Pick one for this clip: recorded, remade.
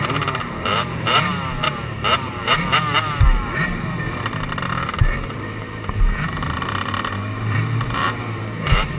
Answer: remade